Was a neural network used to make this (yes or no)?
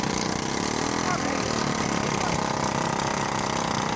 no